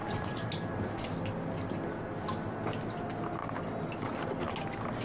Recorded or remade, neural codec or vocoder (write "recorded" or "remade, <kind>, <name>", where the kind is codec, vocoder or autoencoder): recorded